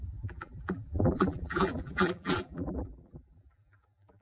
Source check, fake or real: fake